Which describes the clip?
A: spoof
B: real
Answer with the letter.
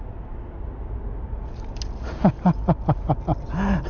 B